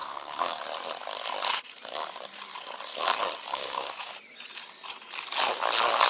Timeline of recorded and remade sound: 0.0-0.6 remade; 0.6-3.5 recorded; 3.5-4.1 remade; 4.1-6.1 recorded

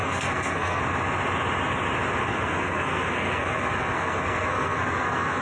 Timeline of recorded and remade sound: 0.0-0.8 remade; 0.8-2.2 recorded; 2.2-5.4 remade

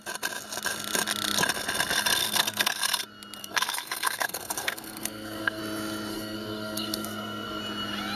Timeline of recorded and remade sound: 0.0-2.2 recorded; 2.2-2.8 remade; 2.8-3.4 recorded; 3.4-5.6 remade; 5.6-6.1 recorded; 6.1-7.6 remade; 7.6-8.2 recorded